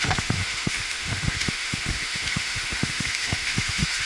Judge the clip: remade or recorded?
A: remade